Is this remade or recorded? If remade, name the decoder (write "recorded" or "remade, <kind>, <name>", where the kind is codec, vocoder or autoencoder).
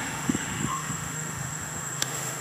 remade, autoencoder, DAC-VAE